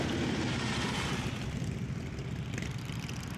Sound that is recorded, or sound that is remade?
recorded